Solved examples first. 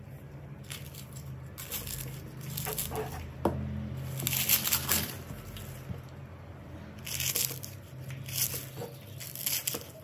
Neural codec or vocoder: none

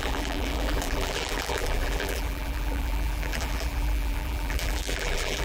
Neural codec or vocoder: vocoder, BigVGAN v2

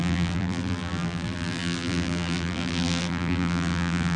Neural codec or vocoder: vocoder, BigVGAN v2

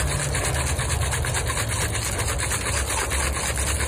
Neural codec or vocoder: none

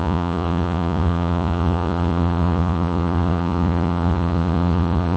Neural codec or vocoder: vocoder, Vocos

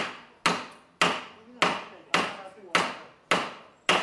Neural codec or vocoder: none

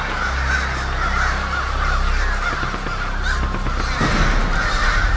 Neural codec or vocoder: none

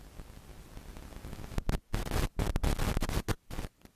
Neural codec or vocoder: none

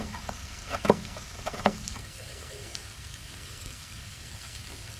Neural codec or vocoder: codec, SNAC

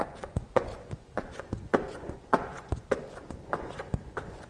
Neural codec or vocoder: vocoder, Vocos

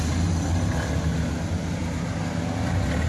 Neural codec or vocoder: none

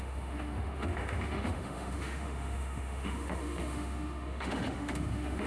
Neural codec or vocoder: autoencoder, DAC-VAE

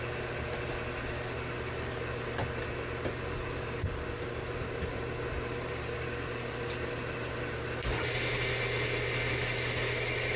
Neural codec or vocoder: none